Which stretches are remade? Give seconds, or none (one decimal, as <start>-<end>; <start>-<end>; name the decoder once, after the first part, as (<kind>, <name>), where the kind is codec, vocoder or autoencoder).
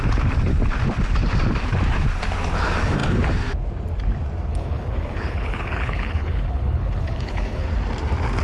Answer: 4.5-7.7 (codec, HILCodec)